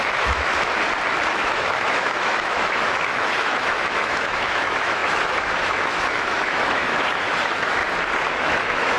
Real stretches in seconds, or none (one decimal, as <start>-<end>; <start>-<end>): 0.5-1.3; 7.8-8.4